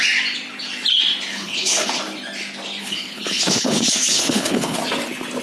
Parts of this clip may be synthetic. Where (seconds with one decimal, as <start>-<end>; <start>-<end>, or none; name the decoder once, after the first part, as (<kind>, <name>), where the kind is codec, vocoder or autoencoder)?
1.3-1.9 (codec, HILCodec); 2.8-4.8